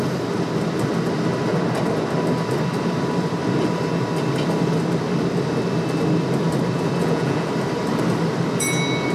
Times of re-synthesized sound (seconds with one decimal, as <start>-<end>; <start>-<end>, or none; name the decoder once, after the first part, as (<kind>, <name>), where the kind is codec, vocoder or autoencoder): 7.0-7.5 (vocoder, Vocos)